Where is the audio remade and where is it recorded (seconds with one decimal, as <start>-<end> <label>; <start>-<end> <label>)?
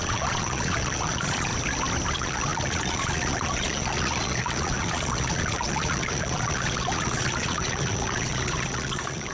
0.0-1.5 remade; 1.5-2.1 recorded; 2.1-9.3 remade